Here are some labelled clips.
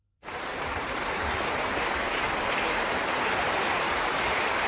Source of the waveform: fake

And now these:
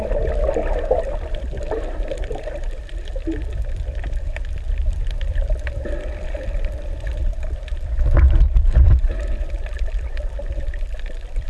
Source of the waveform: fake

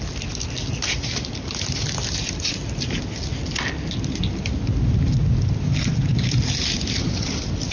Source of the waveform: real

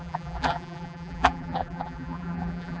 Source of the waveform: fake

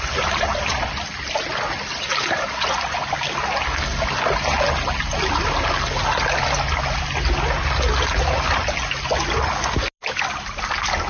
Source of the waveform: real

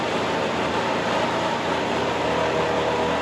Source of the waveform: real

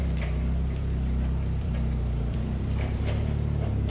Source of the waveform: fake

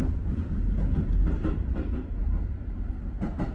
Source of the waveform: real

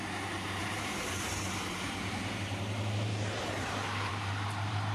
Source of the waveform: fake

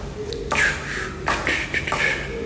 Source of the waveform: real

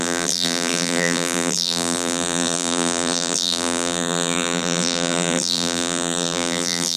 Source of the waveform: fake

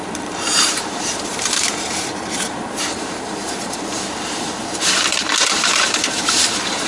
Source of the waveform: fake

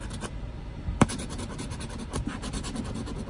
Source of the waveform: fake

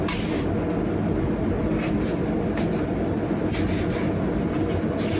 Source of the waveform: real